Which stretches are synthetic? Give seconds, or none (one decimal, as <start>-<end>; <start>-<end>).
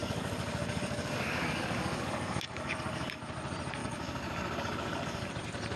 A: 0.0-3.2; 3.8-5.3